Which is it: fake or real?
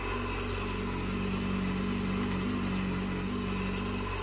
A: real